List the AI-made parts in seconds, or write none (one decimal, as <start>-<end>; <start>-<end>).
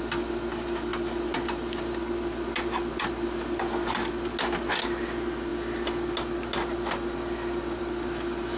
none